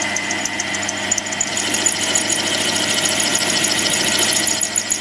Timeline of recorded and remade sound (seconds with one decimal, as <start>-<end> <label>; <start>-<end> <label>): 0.0-5.0 recorded